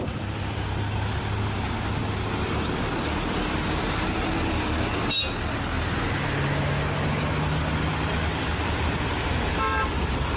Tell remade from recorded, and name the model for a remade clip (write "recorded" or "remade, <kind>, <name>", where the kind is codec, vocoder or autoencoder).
recorded